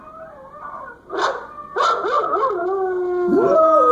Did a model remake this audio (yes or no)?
no